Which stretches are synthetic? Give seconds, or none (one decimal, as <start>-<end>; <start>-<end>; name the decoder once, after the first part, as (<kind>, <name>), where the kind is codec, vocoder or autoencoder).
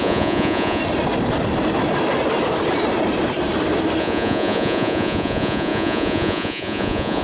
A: 0.0-0.8 (vocoder, Vocos); 4.0-7.2